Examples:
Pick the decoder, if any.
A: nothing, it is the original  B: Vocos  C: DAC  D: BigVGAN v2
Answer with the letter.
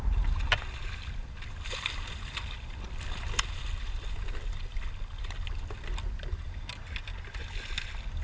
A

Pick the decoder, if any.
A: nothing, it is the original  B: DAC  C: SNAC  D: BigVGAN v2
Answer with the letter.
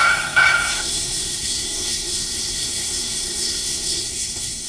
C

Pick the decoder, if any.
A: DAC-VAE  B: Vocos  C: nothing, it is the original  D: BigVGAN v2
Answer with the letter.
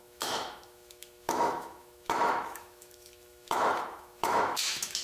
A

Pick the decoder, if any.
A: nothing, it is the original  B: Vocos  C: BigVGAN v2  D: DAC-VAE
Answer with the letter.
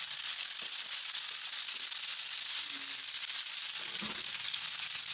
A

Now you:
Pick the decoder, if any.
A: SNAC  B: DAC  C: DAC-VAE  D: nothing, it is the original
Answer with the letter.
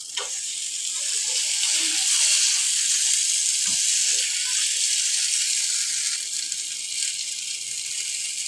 D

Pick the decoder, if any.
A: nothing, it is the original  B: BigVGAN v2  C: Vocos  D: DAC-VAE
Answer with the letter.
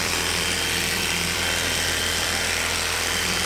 B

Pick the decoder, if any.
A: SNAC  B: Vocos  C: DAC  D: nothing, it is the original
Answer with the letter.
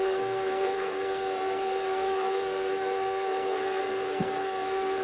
A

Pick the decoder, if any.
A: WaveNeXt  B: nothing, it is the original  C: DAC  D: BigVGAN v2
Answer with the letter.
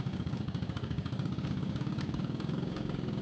C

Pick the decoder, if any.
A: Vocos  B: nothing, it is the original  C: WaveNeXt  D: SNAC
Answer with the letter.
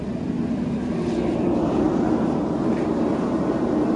B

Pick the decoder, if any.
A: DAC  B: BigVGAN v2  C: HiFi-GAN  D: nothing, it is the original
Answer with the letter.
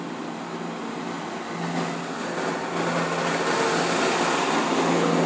D